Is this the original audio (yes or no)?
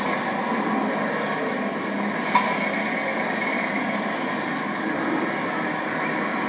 yes